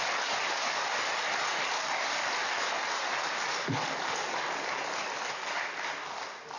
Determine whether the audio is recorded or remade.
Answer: recorded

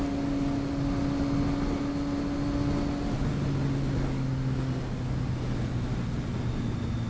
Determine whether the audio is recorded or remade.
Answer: recorded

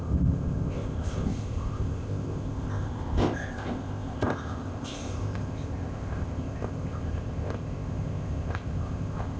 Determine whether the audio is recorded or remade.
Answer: remade